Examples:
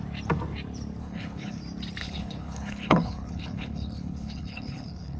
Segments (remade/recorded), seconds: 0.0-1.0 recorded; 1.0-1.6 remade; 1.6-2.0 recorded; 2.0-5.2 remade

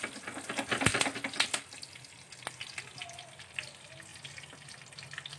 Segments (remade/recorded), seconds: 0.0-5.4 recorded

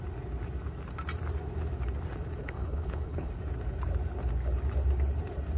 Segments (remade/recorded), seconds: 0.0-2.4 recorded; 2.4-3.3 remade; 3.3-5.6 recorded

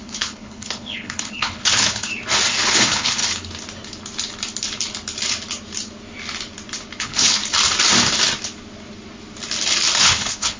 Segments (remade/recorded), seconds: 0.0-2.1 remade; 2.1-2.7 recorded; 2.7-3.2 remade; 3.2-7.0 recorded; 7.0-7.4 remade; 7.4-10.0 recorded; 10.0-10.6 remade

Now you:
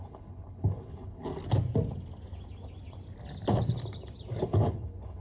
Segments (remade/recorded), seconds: 0.0-1.3 remade; 1.3-4.4 recorded; 4.4-5.2 remade

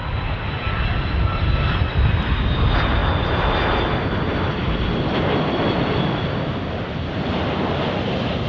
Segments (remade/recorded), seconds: 0.0-8.5 recorded